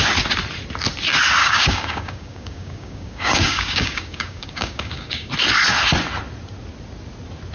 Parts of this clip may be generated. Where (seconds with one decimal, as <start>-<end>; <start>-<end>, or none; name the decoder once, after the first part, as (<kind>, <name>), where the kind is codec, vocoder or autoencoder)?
1.4-5.3 (codec, DAC)